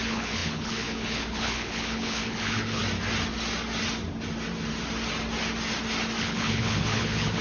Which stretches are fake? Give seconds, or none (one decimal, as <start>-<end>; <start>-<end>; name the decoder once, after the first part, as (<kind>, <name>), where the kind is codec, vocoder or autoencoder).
0.0-2.8 (codec, HILCodec); 6.2-7.4